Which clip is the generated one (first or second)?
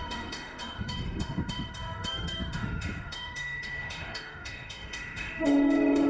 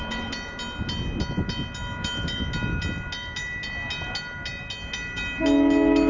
first